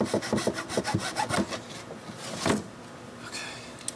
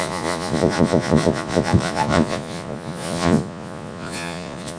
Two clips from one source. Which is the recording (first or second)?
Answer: first